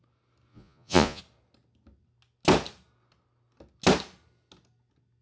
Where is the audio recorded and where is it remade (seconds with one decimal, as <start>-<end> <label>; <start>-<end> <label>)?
0.0-0.5 recorded; 0.5-1.2 remade; 1.2-5.2 recorded

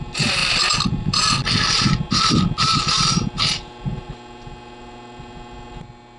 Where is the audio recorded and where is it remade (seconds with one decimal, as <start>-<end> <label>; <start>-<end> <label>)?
0.0-0.4 recorded; 0.4-4.1 remade; 4.1-6.2 recorded

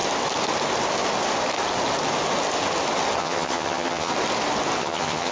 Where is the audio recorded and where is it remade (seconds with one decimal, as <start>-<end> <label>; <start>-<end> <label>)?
0.0-3.2 recorded; 3.2-4.1 remade; 4.1-4.8 recorded; 4.8-5.3 remade

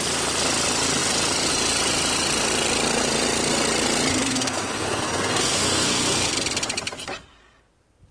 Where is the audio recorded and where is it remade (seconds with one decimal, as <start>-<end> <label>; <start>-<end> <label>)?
0.0-4.1 recorded; 4.1-6.3 remade; 6.3-8.1 recorded

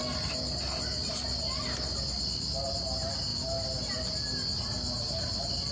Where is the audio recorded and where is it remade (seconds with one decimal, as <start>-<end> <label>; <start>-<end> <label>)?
0.0-5.7 recorded

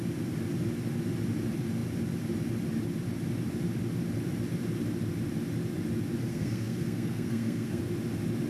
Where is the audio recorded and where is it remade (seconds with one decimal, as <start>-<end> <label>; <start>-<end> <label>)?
0.0-6.3 recorded; 6.3-7.8 remade; 7.8-8.5 recorded

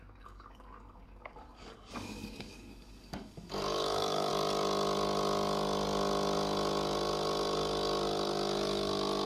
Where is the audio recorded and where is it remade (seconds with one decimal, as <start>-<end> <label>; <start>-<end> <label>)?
0.0-4.3 remade; 4.3-9.3 recorded